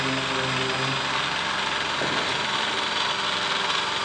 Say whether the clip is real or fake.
real